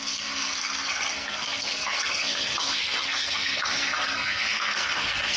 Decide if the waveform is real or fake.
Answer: fake